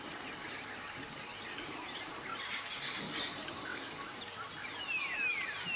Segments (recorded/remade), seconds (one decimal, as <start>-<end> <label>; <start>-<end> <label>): 0.0-2.3 remade; 2.3-3.3 recorded; 3.3-3.7 remade; 3.7-4.8 recorded; 4.8-5.8 remade